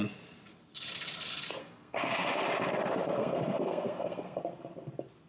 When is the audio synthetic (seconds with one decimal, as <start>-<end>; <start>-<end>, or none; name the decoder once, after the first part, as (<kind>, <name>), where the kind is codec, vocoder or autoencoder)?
1.6-2.3 (codec, SNAC); 3.2-4.4